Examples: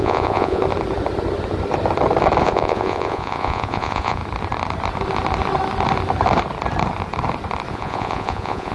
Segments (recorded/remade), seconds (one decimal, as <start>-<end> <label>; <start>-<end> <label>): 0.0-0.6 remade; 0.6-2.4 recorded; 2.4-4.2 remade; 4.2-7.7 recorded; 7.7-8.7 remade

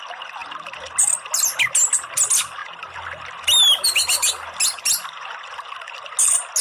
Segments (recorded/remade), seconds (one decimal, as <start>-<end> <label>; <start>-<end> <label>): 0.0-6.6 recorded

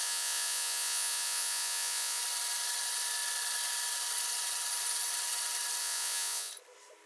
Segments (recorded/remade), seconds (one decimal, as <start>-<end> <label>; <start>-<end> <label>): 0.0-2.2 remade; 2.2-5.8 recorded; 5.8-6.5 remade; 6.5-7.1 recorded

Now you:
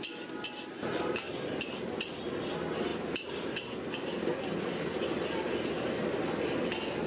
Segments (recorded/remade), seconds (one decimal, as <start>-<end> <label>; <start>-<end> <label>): 0.0-7.1 recorded